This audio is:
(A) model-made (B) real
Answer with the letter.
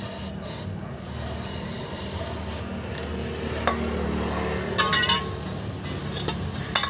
B